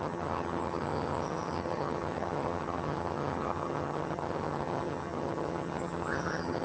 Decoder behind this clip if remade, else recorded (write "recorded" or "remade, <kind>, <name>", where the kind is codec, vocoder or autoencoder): remade, vocoder, HiFi-GAN